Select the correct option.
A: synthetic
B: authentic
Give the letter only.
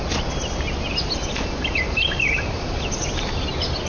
A